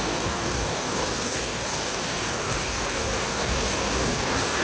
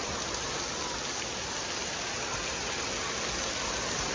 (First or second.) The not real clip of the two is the first